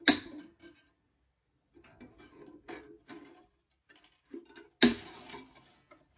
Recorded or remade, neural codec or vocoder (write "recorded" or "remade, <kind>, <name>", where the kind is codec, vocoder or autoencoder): recorded